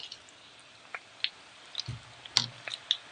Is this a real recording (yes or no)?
yes